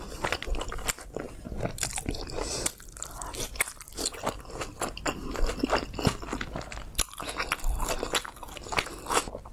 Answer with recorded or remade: recorded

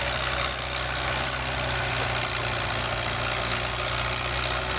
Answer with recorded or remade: recorded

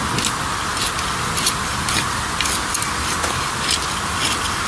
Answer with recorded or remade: recorded